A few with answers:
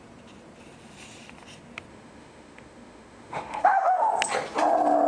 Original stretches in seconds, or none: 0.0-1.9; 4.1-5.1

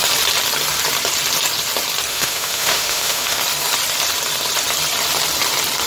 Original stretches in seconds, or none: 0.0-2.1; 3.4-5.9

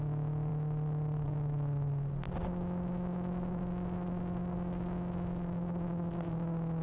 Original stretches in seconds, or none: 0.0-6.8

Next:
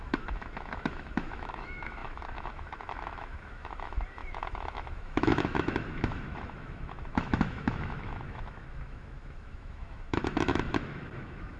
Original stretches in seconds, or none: none